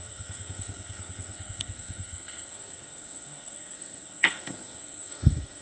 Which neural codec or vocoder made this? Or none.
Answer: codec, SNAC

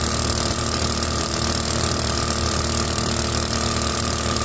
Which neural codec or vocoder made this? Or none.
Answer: vocoder, BigVGAN v2